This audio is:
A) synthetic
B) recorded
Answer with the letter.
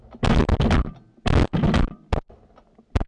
B